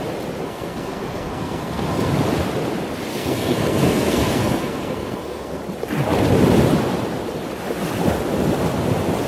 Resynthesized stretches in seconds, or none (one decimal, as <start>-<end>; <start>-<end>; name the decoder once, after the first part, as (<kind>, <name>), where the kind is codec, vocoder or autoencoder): 0.4-2.1 (codec, SNAC); 3.1-5.6